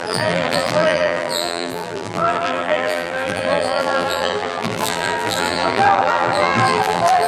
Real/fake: fake